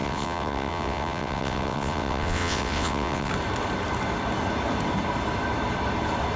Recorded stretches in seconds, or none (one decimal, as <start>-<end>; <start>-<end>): 3.3-6.4